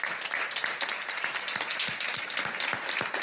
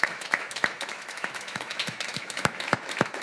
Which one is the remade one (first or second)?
second